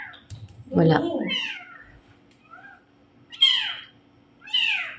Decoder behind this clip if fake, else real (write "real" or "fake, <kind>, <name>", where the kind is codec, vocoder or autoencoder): fake, vocoder, BigVGAN v2